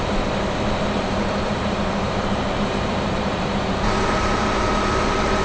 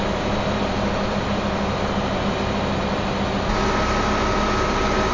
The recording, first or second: second